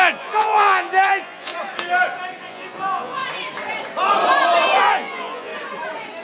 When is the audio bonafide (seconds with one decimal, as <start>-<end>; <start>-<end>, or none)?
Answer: 1.5-2.4; 3.2-4.8; 5.5-6.2